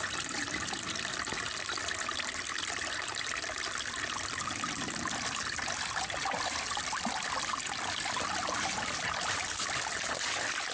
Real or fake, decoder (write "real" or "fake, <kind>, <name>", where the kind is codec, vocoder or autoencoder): real